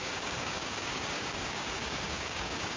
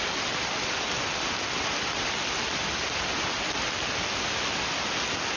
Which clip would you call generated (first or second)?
first